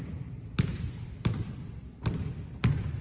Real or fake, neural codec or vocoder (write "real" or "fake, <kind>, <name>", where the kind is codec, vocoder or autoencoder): fake, vocoder, BigVGAN v2